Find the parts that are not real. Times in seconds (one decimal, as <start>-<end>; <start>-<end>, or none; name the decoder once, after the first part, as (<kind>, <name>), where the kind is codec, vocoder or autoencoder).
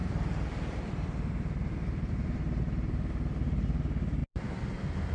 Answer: 0.0-2.4 (vocoder, BigVGAN v2); 4.2-5.1